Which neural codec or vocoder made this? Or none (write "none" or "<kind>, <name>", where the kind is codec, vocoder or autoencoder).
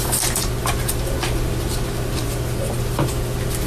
none